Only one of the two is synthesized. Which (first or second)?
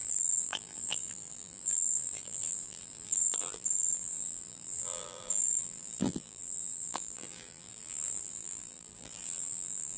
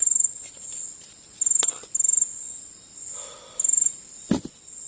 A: first